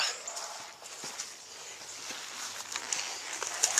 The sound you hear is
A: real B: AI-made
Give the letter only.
A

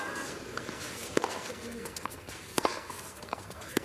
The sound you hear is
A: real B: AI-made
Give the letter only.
B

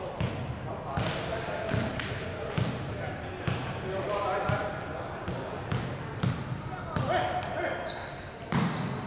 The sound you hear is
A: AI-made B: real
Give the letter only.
B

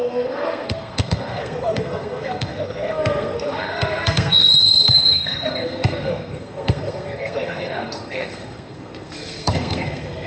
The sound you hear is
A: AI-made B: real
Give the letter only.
A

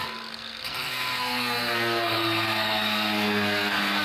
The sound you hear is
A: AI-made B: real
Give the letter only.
A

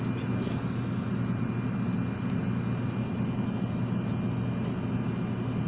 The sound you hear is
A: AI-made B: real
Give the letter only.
B